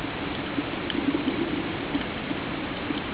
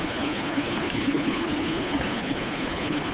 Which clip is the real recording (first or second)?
first